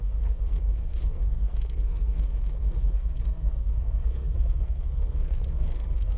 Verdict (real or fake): fake